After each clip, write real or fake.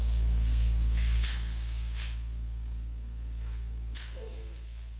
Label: fake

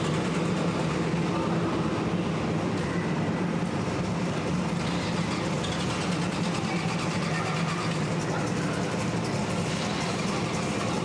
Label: real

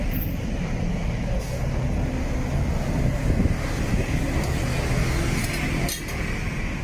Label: real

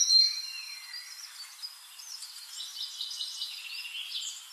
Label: real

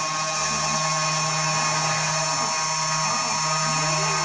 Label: real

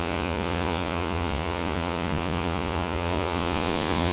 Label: fake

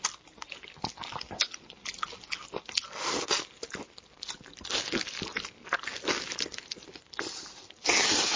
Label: real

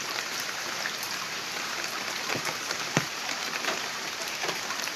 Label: fake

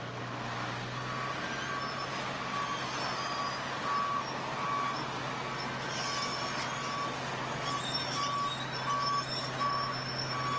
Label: real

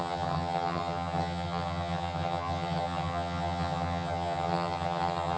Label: fake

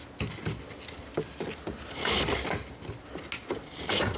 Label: real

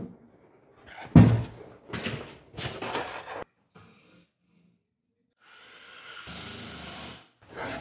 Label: real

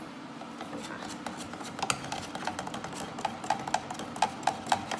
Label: real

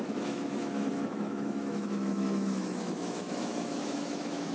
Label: fake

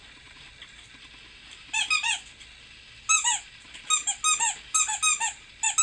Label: real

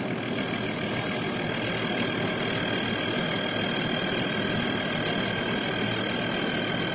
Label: real